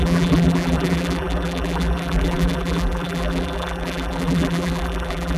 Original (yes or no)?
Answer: no